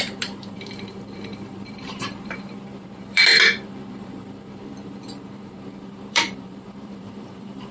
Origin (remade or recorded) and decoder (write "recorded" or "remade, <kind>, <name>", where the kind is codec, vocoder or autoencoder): remade, vocoder, BigVGAN v2